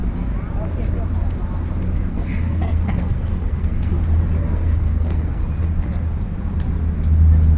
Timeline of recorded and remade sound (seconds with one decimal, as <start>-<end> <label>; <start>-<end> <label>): 0.0-2.1 recorded; 2.1-3.9 remade; 3.9-4.4 recorded; 4.4-5.4 remade; 5.4-7.6 recorded